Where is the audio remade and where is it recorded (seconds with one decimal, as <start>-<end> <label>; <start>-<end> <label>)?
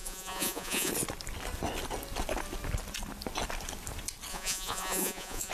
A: 0.0-0.9 remade; 0.9-4.3 recorded; 4.3-5.5 remade